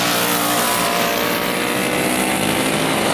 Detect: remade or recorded recorded